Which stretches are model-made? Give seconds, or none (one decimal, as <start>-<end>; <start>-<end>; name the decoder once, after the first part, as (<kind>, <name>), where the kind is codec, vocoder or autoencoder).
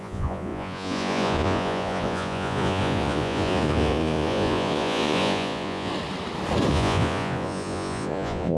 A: 0.0-5.9 (vocoder, Vocos); 6.7-8.6